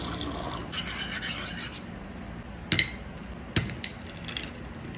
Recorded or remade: recorded